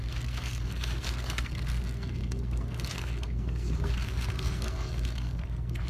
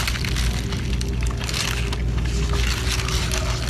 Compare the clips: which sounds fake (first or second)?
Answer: first